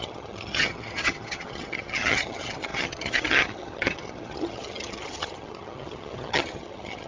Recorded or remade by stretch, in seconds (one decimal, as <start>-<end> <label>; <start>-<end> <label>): 0.0-7.1 remade